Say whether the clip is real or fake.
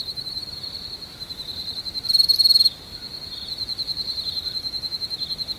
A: real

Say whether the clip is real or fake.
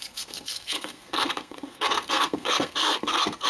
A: fake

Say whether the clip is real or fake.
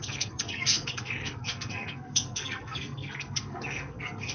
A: fake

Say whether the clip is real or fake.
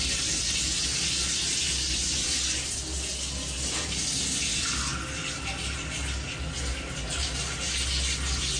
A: real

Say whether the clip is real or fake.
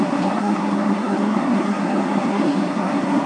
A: fake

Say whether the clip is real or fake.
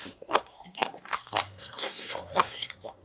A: fake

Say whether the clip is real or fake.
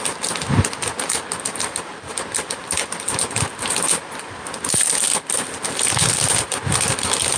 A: real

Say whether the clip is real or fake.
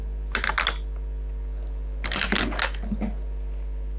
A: real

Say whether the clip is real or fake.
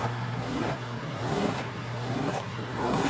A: fake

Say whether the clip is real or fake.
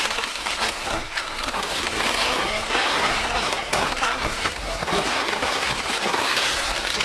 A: fake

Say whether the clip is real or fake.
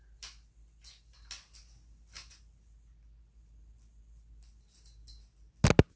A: real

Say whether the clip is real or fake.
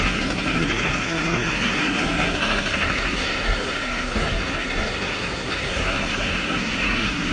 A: fake